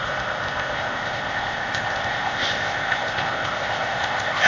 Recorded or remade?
remade